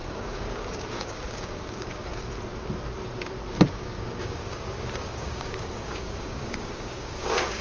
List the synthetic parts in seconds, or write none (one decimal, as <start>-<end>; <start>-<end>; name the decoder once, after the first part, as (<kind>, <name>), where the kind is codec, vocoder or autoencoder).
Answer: 0.0-2.2 (codec, DAC); 3.7-7.6